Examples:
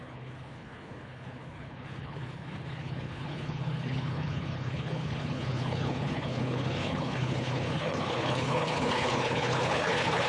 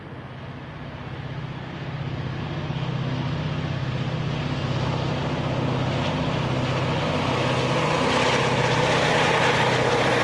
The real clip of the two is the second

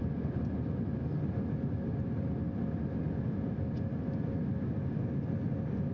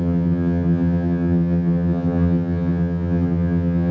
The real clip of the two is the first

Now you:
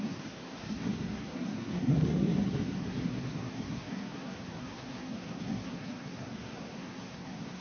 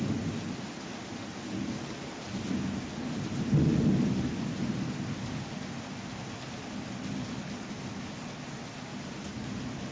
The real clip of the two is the second